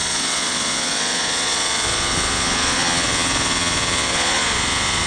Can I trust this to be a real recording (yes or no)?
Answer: no